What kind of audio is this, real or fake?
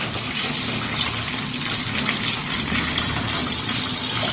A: real